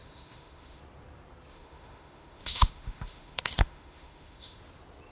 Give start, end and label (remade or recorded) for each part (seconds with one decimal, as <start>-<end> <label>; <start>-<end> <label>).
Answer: 0.0-0.8 remade; 0.8-1.5 recorded; 1.5-4.6 remade; 4.6-5.1 recorded